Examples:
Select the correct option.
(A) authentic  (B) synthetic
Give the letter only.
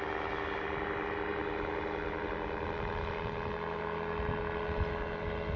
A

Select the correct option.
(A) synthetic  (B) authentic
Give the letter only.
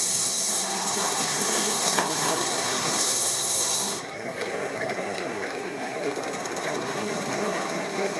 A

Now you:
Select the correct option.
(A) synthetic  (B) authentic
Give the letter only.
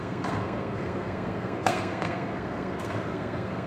A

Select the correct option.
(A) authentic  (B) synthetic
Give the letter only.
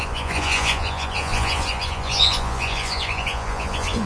B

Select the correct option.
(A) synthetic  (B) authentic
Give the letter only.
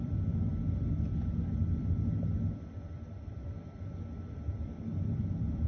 A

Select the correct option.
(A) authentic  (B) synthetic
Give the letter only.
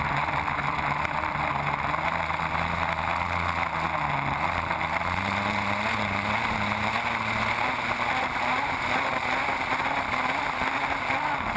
A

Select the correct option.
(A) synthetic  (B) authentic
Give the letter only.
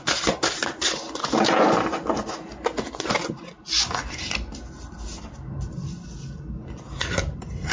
B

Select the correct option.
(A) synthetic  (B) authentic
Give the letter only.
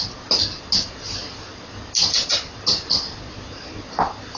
B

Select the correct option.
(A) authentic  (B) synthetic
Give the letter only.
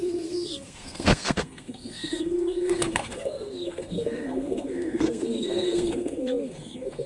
B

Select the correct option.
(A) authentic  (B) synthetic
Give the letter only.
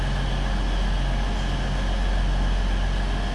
A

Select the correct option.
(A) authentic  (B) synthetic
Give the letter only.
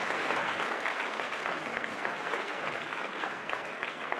B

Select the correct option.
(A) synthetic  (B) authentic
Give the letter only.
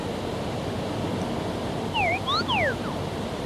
B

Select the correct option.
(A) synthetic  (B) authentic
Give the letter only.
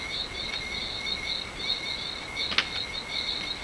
B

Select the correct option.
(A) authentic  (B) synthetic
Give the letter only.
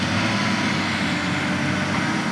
A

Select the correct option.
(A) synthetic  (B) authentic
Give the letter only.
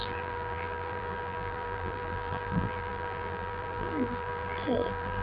A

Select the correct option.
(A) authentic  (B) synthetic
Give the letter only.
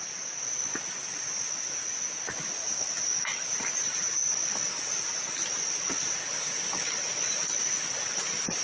A